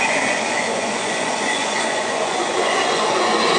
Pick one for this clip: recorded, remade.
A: remade